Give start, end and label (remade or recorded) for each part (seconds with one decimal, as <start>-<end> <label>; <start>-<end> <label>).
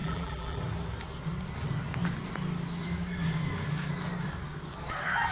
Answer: 0.0-0.6 remade; 0.6-5.3 recorded